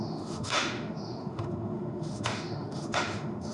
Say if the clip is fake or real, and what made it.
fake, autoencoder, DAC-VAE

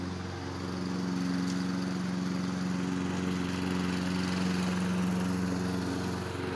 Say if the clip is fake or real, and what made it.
real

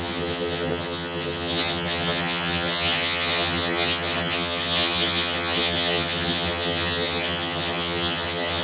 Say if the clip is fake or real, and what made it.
fake, vocoder, HiFi-GAN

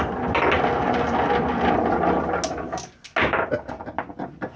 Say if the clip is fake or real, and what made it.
real